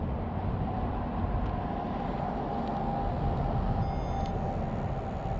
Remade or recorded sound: recorded